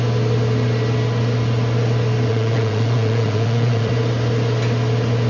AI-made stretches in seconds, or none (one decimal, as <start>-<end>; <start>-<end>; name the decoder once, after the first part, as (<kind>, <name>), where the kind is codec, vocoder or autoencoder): 2.3-3.9 (vocoder, Vocos)